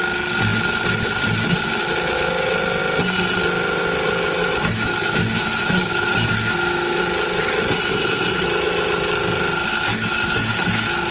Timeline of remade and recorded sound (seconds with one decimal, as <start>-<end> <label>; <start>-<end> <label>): 0.0-4.4 recorded; 4.4-7.0 remade; 7.0-9.9 recorded; 9.9-10.5 remade; 10.5-11.1 recorded